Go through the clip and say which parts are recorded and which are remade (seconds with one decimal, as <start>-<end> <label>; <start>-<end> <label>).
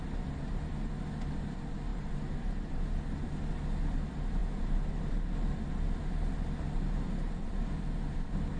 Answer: 0.0-1.9 recorded; 1.9-2.8 remade; 2.8-8.6 recorded